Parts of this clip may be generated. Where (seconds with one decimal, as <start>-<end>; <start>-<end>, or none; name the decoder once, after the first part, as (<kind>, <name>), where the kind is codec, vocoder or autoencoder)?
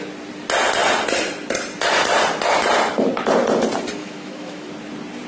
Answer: 4.0-4.7 (autoencoder, DAC-VAE)